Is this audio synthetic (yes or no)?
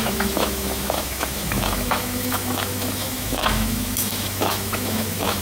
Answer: yes